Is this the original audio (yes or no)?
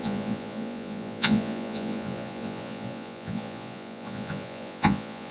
no